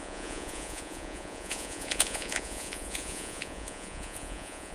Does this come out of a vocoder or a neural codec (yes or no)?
yes